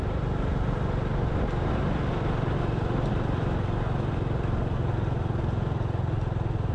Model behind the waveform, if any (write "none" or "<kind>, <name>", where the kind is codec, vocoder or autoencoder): none